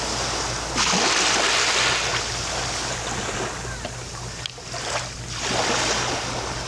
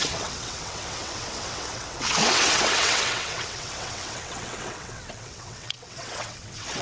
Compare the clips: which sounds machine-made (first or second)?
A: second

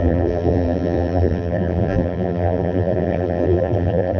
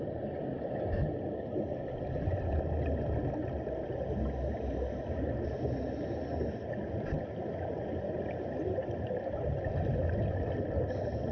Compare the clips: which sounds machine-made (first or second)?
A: first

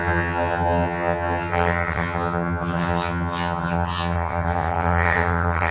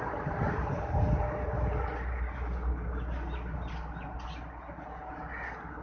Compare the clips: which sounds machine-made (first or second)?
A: first